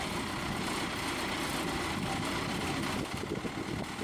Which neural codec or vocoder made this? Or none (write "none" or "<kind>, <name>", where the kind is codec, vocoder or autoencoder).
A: none